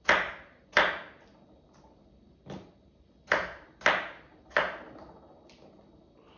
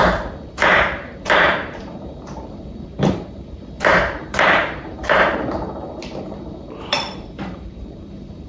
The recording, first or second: first